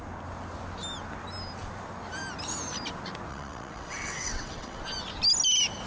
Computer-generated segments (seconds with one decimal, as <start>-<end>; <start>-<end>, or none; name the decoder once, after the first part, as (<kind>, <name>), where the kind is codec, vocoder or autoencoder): 3.3-4.8 (vocoder, WaveNeXt)